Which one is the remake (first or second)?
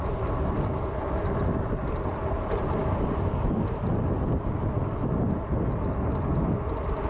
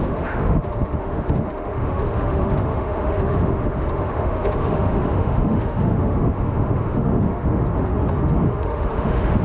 second